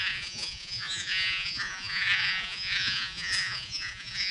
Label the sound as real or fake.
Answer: fake